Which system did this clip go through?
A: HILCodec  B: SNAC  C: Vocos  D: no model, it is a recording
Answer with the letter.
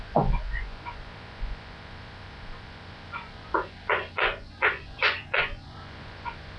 C